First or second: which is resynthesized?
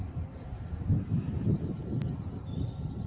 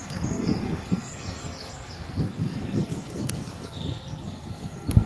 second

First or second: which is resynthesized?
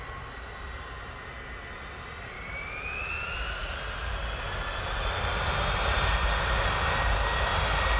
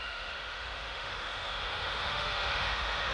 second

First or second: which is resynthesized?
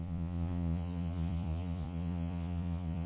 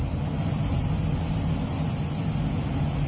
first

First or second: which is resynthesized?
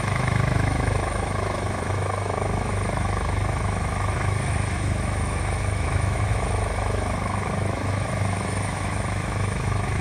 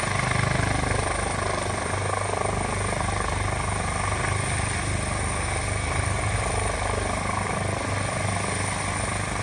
first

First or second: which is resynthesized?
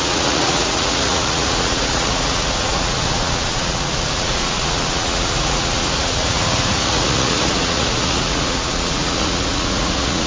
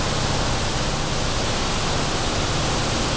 first